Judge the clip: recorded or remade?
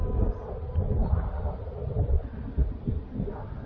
recorded